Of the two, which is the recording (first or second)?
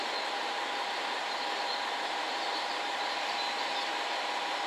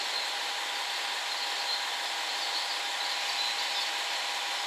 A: second